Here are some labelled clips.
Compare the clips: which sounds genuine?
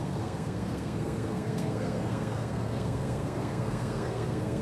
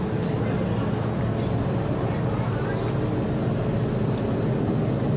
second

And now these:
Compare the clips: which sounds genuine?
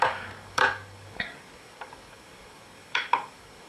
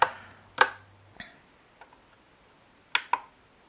second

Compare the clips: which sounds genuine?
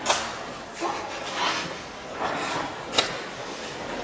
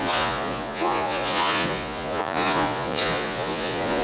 first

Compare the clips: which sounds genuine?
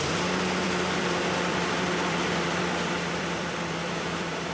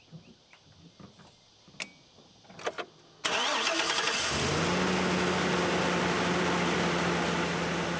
second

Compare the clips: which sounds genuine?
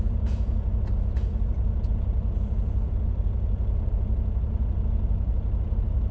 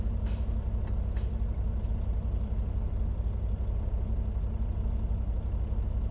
second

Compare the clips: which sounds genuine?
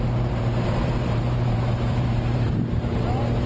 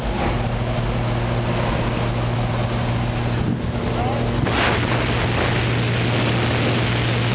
second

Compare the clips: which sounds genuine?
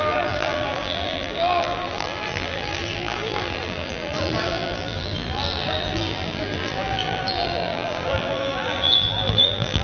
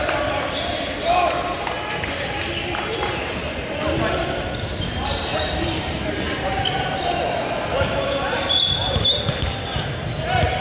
second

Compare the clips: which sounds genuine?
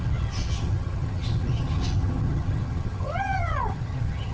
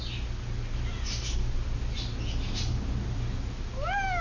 second